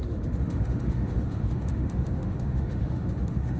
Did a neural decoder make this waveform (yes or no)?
yes